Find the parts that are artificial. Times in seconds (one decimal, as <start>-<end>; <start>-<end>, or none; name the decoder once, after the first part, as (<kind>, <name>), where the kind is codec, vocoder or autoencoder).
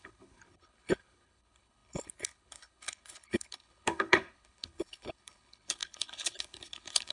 0.0-7.1 (codec, HILCodec)